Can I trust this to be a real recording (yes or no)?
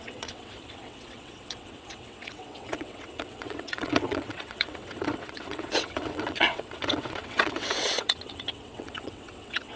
no